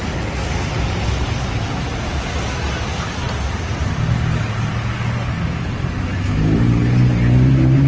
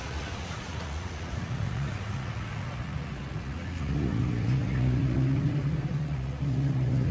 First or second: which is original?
first